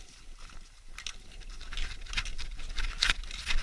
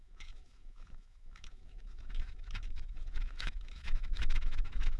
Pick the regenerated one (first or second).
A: second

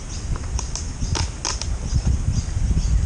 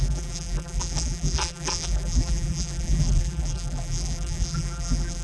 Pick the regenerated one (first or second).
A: second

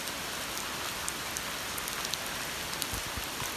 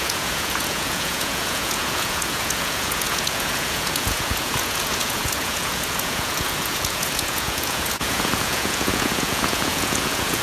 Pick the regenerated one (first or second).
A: second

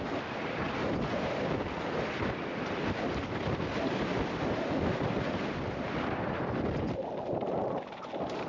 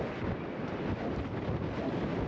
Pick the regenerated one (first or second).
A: first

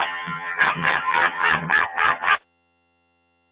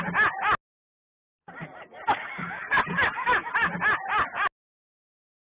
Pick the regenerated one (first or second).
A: first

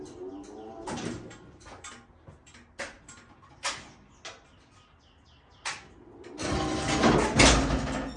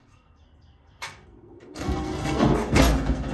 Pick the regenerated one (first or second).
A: second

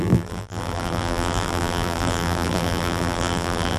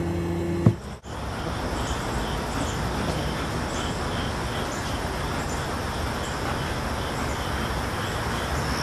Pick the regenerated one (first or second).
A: first